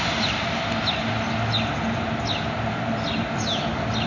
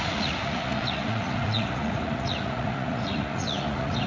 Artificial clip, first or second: second